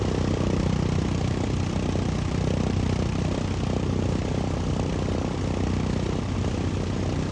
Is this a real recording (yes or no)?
yes